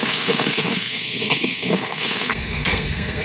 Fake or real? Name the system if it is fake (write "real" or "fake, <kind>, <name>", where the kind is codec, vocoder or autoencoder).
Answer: fake, codec, SNAC